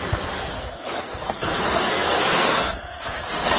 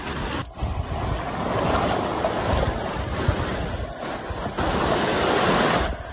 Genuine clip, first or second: second